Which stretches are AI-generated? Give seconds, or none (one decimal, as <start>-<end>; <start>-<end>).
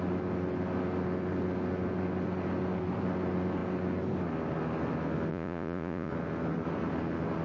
5.3-6.1